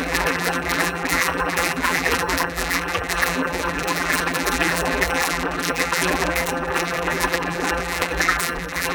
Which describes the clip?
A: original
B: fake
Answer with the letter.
B